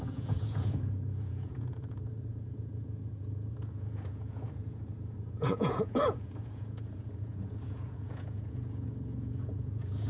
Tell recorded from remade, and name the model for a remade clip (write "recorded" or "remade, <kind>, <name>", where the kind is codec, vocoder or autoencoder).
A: remade, vocoder, Vocos